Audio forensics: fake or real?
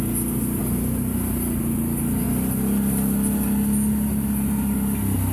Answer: real